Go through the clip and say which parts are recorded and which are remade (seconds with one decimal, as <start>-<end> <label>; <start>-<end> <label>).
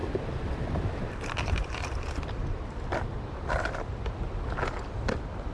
0.0-2.6 remade; 2.6-3.1 recorded; 3.1-3.7 remade; 3.7-5.5 recorded